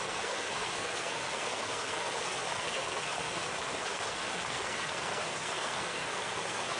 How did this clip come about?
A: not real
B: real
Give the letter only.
A